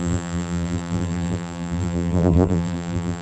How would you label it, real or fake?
fake